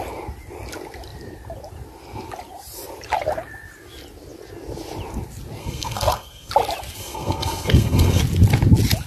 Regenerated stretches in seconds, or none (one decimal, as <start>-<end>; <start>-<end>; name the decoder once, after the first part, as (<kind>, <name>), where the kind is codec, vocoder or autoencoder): 5.6-6.5 (codec, SNAC); 7.0-8.2